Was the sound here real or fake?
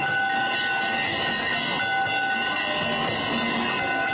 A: real